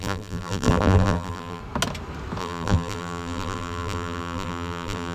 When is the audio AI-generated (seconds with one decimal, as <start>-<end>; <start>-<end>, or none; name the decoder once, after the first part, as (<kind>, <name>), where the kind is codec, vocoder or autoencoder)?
0.0-1.6 (vocoder, BigVGAN v2); 2.4-5.1